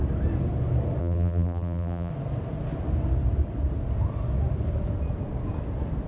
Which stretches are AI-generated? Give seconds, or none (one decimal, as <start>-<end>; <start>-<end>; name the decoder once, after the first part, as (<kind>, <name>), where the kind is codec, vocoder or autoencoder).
1.0-2.1 (vocoder, BigVGAN v2)